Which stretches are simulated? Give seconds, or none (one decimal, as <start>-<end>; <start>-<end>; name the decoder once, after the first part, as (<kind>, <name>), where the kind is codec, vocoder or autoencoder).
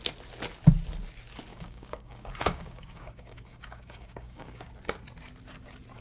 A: 1.5-4.7 (codec, DAC)